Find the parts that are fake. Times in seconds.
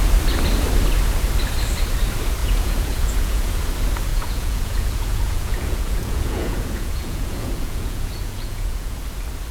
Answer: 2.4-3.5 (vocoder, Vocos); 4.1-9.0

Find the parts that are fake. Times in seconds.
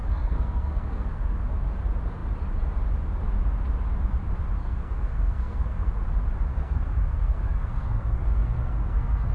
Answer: 0.0-1.8 (codec, SNAC); 4.6-5.9; 6.5-9.3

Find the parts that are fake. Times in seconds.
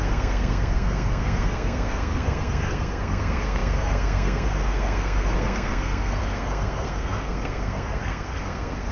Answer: 0.0-8.9 (codec, SNAC)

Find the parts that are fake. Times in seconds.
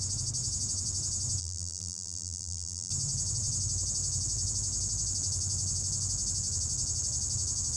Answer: 1.4-2.9 (vocoder, BigVGAN v2)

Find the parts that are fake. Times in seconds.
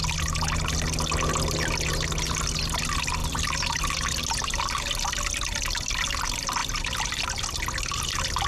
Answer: 6.6-7.5 (vocoder, BigVGAN v2)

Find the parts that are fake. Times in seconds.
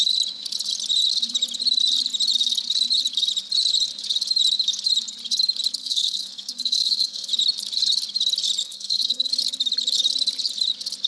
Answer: 5.8-7.3 (codec, SNAC); 8.6-9.3